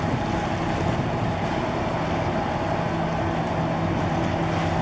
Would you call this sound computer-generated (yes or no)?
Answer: no